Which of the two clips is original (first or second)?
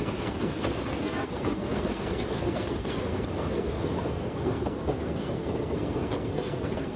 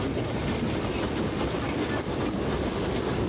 second